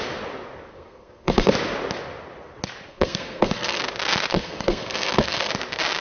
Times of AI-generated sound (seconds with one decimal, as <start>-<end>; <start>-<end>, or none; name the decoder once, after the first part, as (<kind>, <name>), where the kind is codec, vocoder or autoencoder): 0.7-1.5 (codec, SNAC); 2.9-3.8; 4.3-5.5